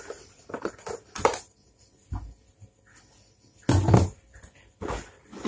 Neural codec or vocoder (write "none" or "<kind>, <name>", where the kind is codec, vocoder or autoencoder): none